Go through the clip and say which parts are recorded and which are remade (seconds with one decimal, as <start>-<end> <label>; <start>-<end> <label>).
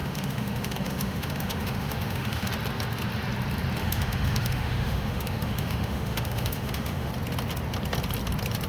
0.0-2.5 remade; 2.5-3.8 recorded; 3.8-7.1 remade; 7.1-8.7 recorded